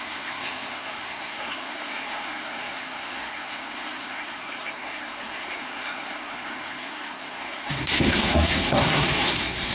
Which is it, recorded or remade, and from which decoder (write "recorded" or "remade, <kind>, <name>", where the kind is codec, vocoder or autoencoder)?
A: remade, codec, SNAC